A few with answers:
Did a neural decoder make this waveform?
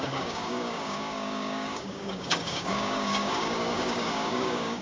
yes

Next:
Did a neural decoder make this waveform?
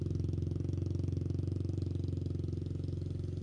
no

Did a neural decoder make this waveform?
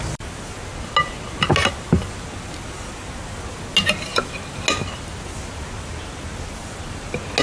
no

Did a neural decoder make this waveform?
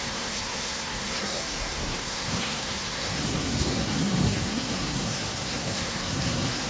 yes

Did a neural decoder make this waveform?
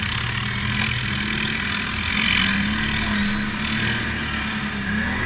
no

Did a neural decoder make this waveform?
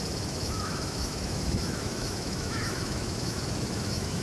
yes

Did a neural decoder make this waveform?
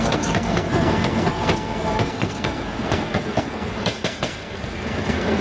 yes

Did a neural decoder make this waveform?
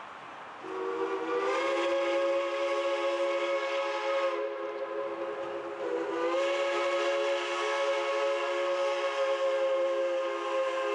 no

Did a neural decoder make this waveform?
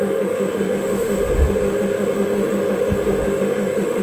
yes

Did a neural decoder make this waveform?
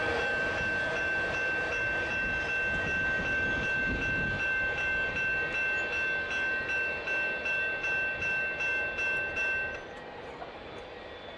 no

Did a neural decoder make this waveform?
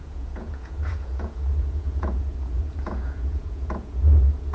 yes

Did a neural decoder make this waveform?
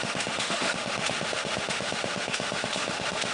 yes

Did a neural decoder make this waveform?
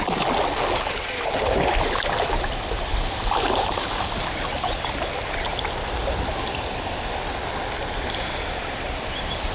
no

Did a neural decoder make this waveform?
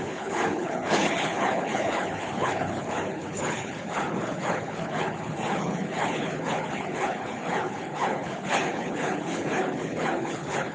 yes